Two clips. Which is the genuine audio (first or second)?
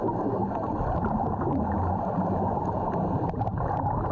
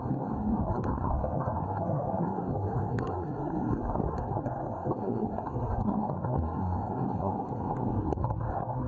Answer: first